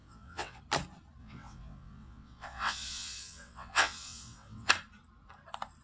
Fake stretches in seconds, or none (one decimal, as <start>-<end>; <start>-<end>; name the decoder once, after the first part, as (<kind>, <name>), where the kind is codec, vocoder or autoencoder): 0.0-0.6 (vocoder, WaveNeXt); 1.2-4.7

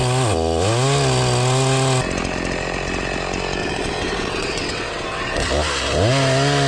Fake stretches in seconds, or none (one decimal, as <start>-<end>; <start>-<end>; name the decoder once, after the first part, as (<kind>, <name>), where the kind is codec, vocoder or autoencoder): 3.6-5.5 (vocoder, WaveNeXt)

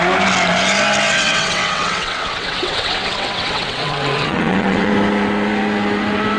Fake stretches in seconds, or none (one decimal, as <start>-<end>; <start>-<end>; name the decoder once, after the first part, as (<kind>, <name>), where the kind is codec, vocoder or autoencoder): 1.1-4.9 (vocoder, WaveNeXt)